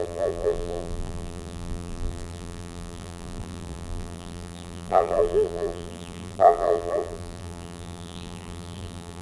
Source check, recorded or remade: remade